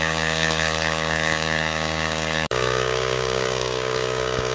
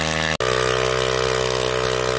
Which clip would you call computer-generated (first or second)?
first